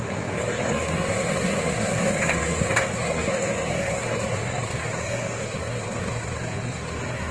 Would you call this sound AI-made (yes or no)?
yes